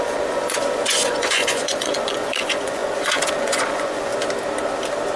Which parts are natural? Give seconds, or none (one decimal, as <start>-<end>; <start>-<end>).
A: 4.1-5.2